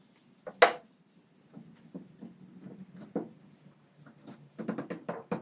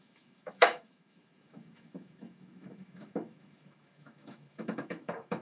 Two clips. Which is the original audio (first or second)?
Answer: first